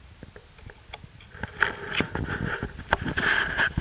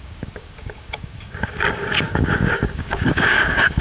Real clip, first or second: first